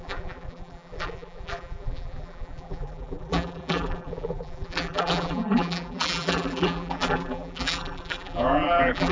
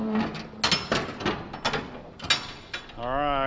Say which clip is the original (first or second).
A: second